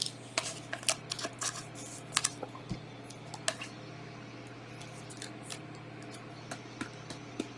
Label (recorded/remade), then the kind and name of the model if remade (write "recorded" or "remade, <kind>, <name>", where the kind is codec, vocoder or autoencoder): recorded